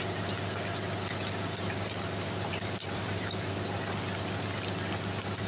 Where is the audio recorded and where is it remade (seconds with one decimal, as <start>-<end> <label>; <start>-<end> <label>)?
0.0-1.2 recorded; 1.2-3.5 remade; 3.5-5.5 recorded